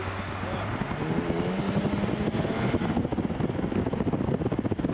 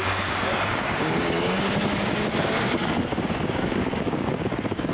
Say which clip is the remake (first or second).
second